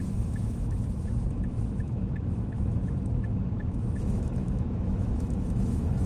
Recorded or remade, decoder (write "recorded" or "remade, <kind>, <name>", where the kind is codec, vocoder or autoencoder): remade, autoencoder, DAC-VAE